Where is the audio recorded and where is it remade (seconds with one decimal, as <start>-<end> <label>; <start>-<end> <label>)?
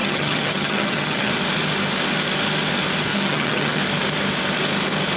0.0-1.3 remade; 1.3-3.1 recorded; 3.1-3.8 remade; 3.8-5.2 recorded